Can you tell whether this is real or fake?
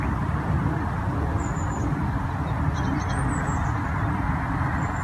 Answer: real